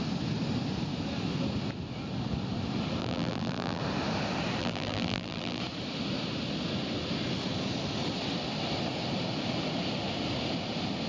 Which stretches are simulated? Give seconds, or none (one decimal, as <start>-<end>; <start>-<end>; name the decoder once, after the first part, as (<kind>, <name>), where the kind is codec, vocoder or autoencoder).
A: 3.0-3.8 (vocoder, BigVGAN v2); 4.6-5.6